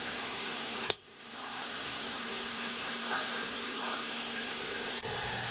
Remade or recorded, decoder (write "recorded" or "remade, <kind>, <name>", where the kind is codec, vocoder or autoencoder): remade, codec, SNAC